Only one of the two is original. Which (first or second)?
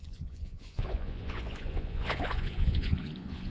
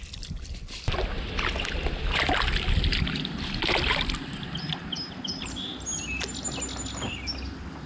second